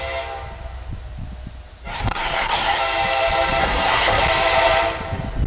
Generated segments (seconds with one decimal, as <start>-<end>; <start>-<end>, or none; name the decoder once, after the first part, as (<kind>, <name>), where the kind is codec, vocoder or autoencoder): 1.9-2.8 (codec, SNAC); 3.6-4.2